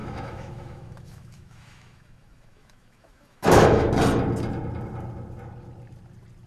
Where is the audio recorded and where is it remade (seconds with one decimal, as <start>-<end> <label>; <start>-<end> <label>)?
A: 0.0-3.9 remade; 3.9-6.5 recorded